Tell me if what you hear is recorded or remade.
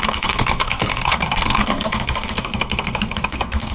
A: remade